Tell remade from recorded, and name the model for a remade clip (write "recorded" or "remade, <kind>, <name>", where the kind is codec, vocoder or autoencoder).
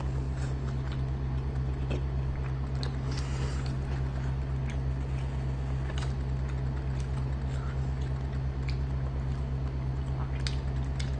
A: recorded